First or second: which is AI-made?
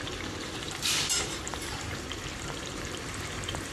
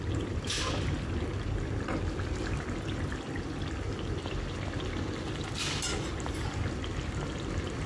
first